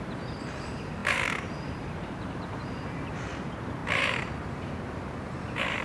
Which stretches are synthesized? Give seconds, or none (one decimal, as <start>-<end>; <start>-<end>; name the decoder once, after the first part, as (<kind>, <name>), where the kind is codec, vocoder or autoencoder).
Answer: 0.0-5.8 (vocoder, BigVGAN v2)